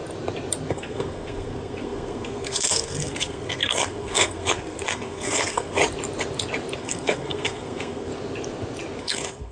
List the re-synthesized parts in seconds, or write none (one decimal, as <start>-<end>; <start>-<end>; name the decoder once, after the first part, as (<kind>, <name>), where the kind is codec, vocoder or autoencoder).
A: 0.7-5.8 (codec, SNAC); 6.8-8.1; 9.0-9.5